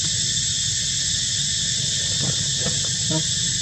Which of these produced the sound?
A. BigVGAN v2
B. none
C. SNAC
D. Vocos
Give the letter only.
B